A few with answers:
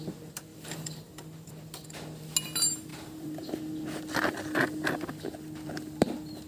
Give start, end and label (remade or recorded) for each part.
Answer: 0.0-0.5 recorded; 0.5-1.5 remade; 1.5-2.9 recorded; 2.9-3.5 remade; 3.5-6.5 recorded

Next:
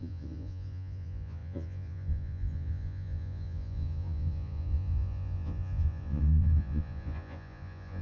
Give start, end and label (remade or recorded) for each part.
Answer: 0.0-8.0 remade

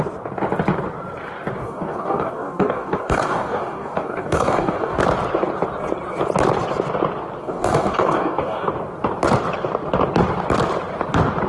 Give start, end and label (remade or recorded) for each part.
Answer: 0.0-1.6 recorded; 1.6-5.0 remade; 5.0-7.4 recorded; 7.4-8.7 remade; 8.7-11.5 recorded